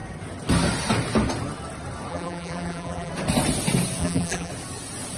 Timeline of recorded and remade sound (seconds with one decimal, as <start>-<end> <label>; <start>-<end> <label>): 0.0-2.1 recorded; 2.1-3.1 remade; 3.1-4.0 recorded; 4.0-4.5 remade; 4.5-5.2 recorded